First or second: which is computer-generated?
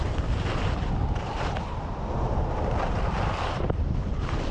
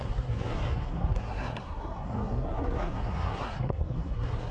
second